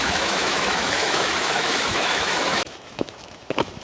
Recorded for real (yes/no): no